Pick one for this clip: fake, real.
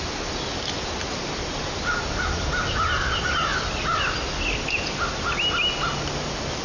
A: real